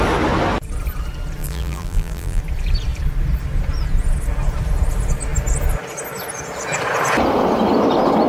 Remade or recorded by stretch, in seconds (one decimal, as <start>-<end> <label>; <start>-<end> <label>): 0.0-1.4 recorded; 1.4-2.4 remade; 2.4-8.3 recorded